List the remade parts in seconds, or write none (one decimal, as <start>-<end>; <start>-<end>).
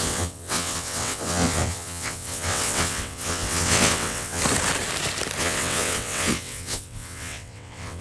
0.0-4.4; 5.4-8.0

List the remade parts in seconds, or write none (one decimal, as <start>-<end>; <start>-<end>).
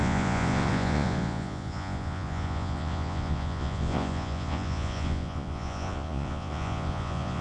0.0-7.4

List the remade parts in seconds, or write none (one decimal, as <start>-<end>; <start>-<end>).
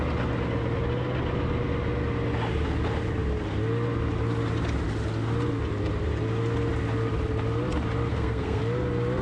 8.1-8.6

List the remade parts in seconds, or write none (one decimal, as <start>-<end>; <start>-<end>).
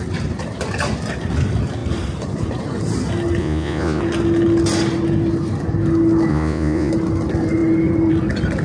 3.4-4.0; 6.3-6.9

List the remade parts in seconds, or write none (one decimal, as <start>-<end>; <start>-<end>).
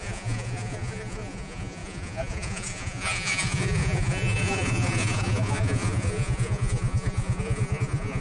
0.0-8.2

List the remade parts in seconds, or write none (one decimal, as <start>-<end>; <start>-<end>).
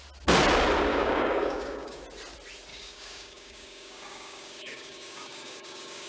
0.9-2.0; 2.7-6.1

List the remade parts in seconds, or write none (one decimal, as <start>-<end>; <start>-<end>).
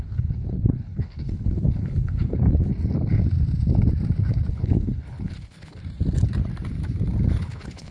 0.0-2.7; 4.5-5.8; 7.4-7.9